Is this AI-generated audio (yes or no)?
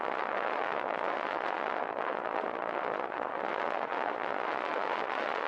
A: yes